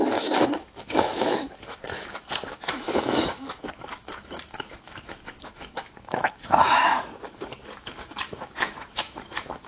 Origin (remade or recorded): remade